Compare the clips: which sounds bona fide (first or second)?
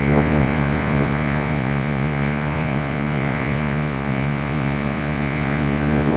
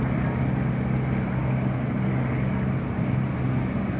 second